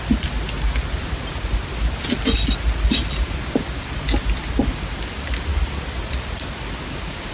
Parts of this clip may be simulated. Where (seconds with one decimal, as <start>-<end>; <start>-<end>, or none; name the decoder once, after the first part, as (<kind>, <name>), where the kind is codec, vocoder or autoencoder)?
none